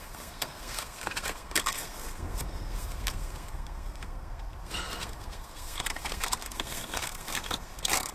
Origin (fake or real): fake